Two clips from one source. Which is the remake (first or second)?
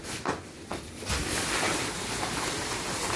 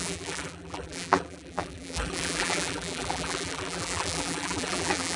second